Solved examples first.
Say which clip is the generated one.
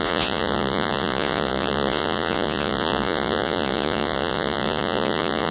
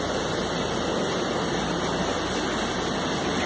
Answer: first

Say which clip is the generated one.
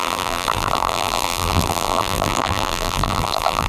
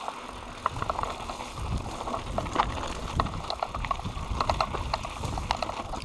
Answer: first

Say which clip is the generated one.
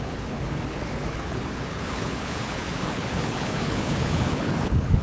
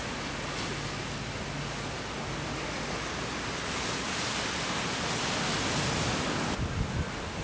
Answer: first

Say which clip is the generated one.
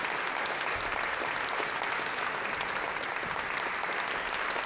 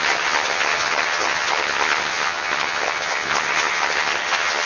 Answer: second